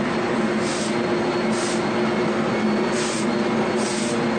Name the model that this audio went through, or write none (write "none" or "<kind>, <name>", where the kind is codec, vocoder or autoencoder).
none